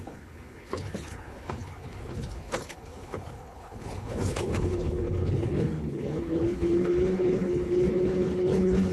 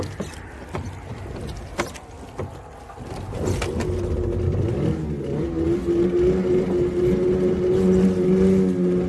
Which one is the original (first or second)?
second